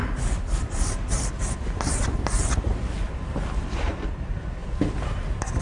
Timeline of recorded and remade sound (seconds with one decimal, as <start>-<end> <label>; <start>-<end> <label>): 0.0-5.6 remade